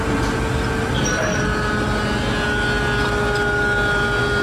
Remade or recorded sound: recorded